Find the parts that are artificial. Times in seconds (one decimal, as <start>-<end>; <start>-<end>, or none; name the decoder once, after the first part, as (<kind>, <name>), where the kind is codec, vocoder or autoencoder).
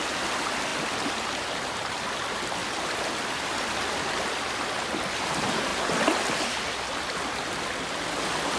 none